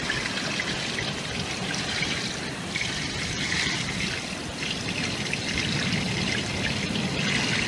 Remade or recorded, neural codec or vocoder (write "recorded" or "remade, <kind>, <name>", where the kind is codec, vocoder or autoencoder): recorded